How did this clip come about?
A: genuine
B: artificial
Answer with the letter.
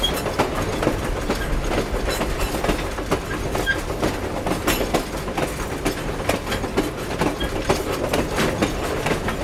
A